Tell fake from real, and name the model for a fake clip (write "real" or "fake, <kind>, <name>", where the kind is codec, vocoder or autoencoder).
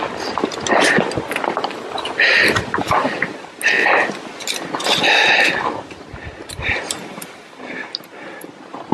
real